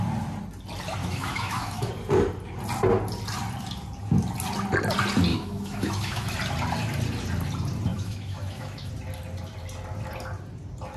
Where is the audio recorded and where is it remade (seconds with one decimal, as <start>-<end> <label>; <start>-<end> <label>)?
0.0-1.0 recorded; 1.0-1.9 remade; 1.9-5.3 recorded; 5.3-6.3 remade; 6.3-7.9 recorded; 7.9-8.9 remade; 8.9-11.0 recorded